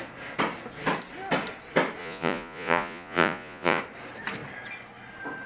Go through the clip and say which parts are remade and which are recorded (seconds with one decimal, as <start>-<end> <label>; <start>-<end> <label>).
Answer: 0.0-2.0 recorded; 2.0-3.8 remade; 3.8-5.5 recorded